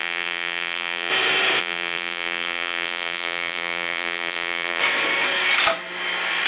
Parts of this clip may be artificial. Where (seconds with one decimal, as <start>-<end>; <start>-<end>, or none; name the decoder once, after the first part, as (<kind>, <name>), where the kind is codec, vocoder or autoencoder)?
0.0-1.1 (vocoder, BigVGAN v2); 1.6-4.8